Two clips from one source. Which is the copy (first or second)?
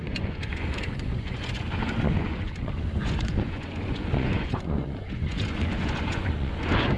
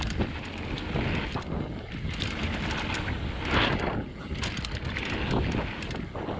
first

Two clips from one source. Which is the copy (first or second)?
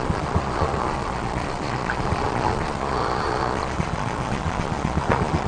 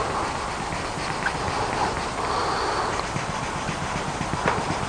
first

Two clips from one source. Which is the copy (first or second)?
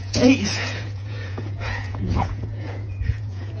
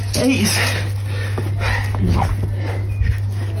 first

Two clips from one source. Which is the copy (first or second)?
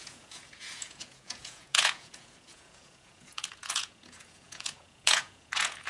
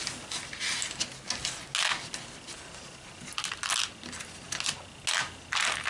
first